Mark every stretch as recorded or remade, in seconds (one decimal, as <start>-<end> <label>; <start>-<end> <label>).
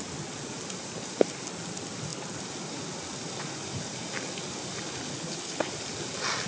0.0-5.1 recorded; 5.1-5.7 remade; 5.7-6.5 recorded